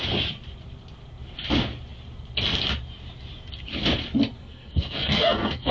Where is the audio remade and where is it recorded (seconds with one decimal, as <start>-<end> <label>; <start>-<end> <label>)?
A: 0.0-4.4 recorded; 4.4-5.7 remade